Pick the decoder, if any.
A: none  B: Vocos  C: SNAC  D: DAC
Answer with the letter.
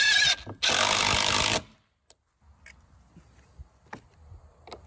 A